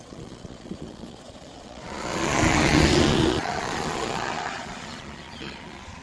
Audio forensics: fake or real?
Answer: fake